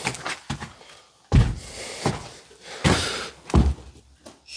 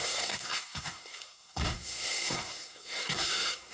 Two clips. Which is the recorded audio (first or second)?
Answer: first